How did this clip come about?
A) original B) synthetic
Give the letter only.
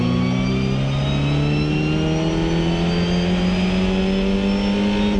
A